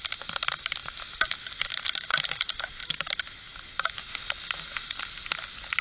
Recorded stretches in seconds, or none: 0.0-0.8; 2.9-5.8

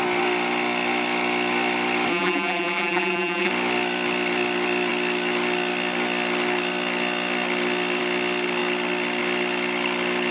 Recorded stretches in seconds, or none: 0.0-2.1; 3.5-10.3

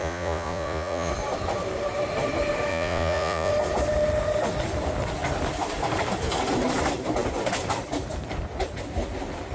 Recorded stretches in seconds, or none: 1.1-2.7; 3.5-9.5

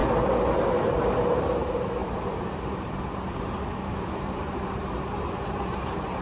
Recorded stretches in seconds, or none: 0.0-1.4

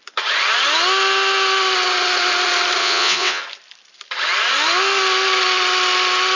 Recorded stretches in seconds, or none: 0.0-2.8; 3.4-6.4

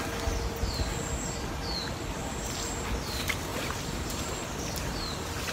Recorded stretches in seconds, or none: 0.0-3.5; 4.2-5.5

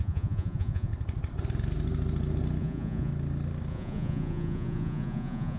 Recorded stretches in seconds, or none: 0.9-2.6; 3.1-3.7